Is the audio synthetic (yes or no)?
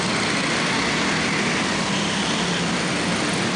no